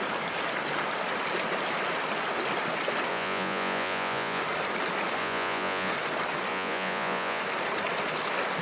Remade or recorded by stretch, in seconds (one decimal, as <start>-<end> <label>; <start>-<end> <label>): 0.0-3.1 recorded; 3.1-4.4 remade; 4.4-5.2 recorded; 5.2-5.9 remade; 5.9-6.5 recorded; 6.5-7.4 remade; 7.4-8.6 recorded